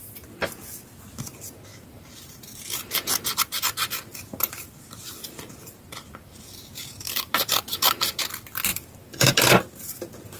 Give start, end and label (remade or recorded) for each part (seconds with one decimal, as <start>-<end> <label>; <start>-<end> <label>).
0.0-1.7 recorded; 1.7-3.4 remade; 3.4-4.1 recorded; 4.1-8.2 remade; 8.2-8.7 recorded; 8.7-10.4 remade